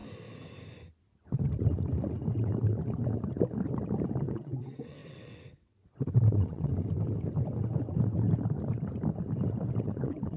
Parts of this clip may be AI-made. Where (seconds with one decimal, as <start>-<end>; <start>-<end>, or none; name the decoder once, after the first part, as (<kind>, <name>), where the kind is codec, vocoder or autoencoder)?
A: 4.2-6.7 (vocoder, WaveNeXt); 9.8-10.4